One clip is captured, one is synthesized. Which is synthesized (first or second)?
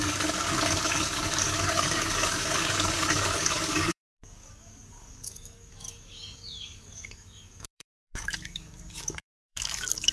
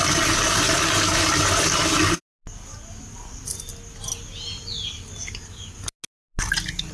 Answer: first